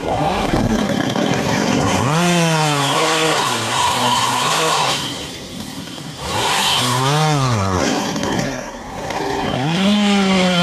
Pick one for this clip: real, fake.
fake